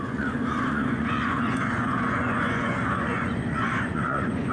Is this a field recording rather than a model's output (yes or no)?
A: no